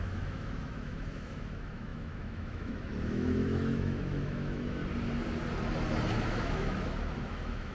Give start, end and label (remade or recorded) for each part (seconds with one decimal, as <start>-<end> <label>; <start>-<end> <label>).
0.0-4.8 remade; 4.8-6.1 recorded; 6.1-7.7 remade